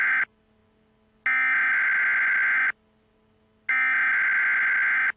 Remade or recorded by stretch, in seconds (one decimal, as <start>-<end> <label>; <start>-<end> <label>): 0.0-5.2 recorded